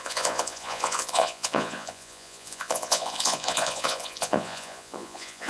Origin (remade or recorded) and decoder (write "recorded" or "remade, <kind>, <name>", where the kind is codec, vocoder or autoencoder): remade, vocoder, Vocos